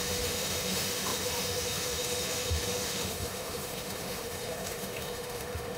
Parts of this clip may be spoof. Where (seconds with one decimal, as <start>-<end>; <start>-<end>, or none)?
0.0-5.8